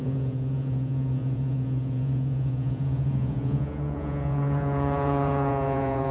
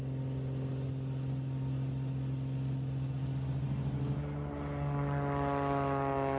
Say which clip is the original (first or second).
second